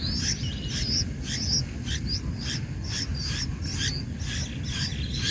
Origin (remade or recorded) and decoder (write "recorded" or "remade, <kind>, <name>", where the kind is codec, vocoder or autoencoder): remade, vocoder, BigVGAN v2